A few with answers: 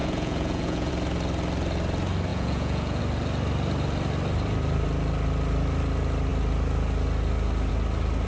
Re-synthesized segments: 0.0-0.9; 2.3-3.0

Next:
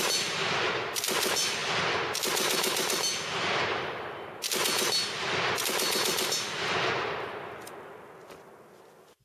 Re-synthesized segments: none